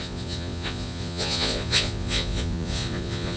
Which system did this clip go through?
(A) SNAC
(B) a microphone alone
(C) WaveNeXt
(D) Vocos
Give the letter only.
D